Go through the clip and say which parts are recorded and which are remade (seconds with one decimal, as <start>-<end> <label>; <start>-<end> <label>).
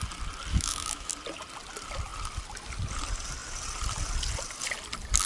0.0-0.5 recorded; 0.5-1.1 remade; 1.1-5.3 recorded